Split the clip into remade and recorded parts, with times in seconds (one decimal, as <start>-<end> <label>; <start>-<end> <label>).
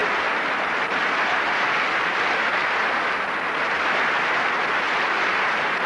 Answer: 0.0-5.9 recorded